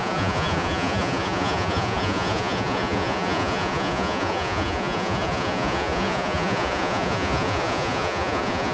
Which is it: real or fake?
fake